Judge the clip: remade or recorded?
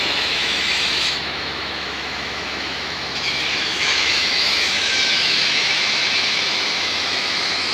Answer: remade